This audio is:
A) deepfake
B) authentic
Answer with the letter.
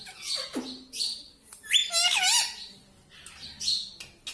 B